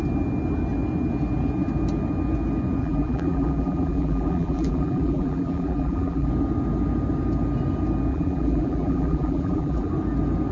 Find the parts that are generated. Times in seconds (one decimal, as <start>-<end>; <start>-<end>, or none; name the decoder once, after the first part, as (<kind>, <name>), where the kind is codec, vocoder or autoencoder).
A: 2.8-6.3 (vocoder, BigVGAN v2); 8.1-9.9